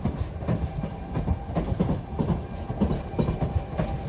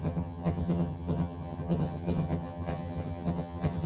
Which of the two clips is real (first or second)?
first